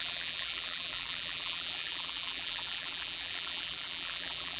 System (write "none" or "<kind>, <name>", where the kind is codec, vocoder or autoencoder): vocoder, BigVGAN v2